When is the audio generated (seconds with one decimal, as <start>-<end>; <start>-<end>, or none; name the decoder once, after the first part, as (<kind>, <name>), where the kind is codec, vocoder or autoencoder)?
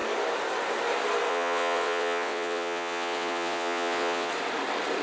1.3-4.3 (vocoder, WaveNeXt)